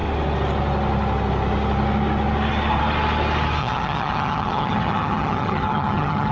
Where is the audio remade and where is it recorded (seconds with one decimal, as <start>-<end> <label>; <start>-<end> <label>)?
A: 0.0-3.6 recorded; 3.6-6.3 remade